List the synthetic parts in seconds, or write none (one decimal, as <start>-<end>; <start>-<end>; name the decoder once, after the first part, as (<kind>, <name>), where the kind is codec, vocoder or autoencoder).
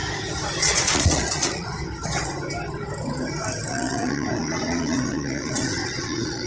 0.6-1.7 (vocoder, Vocos); 3.7-6.5